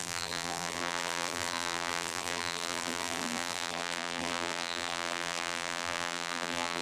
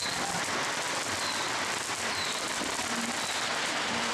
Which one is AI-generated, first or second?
first